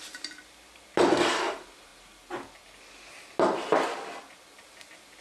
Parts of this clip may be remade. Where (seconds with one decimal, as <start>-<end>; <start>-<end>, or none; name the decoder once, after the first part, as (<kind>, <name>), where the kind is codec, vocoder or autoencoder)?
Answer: none